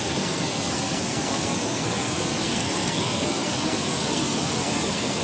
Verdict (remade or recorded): remade